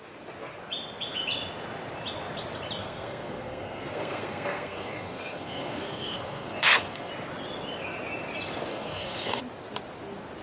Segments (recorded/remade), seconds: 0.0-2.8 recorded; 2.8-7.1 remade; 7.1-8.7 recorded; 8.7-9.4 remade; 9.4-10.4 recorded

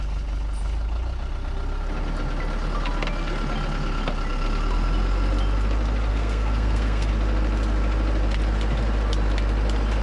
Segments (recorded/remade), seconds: 0.0-6.1 recorded; 6.1-7.1 remade; 7.1-10.0 recorded

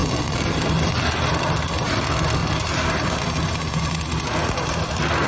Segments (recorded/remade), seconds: 0.0-5.3 recorded